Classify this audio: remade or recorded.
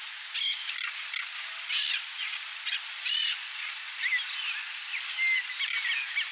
recorded